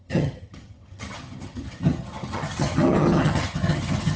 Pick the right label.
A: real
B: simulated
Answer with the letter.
B